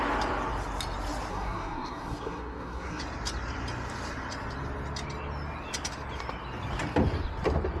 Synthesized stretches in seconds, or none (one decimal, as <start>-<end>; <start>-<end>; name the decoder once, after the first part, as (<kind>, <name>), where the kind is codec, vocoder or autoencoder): 1.3-3.0 (codec, SNAC)